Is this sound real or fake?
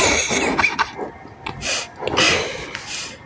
real